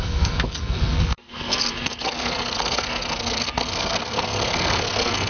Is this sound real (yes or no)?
no